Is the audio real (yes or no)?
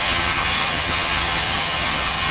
no